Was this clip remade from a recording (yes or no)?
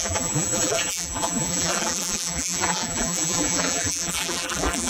yes